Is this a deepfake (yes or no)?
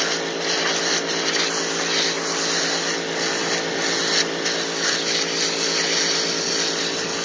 no